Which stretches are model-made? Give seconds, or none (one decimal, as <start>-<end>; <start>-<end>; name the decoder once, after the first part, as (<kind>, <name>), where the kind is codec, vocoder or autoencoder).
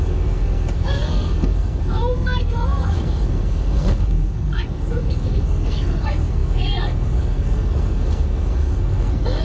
0.0-9.4 (codec, SNAC)